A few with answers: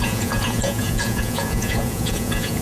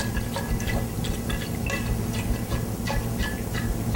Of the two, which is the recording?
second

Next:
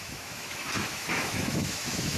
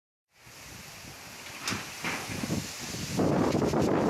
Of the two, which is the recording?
second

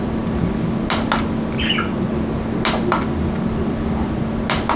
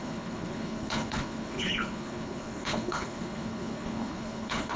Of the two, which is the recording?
first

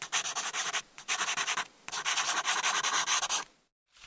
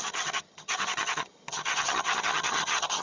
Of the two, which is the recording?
first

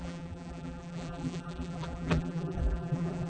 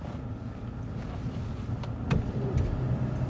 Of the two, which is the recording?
second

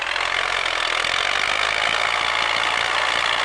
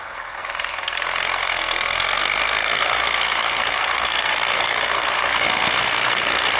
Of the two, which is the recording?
first